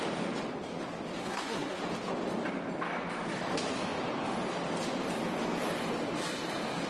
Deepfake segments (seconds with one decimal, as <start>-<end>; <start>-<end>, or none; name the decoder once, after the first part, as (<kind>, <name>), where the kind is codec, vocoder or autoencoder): 1.2-1.8 (codec, SNAC)